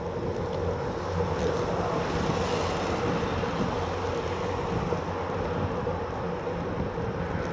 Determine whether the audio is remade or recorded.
recorded